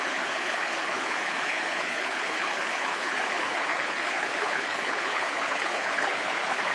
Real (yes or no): no